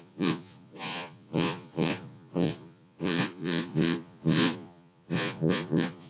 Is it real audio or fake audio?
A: fake